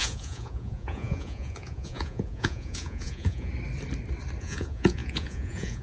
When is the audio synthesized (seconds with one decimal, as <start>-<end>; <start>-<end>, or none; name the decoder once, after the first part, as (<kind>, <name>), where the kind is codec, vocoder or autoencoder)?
0.0-3.5 (vocoder, Vocos); 4.4-5.8